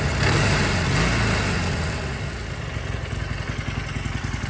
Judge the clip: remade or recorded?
recorded